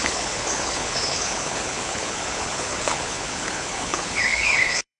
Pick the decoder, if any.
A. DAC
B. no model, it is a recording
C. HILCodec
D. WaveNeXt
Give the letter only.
C